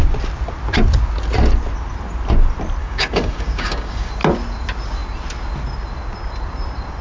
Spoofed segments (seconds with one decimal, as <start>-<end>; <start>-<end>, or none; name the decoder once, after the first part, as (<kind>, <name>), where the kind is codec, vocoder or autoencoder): 2.8-4.1 (codec, DAC)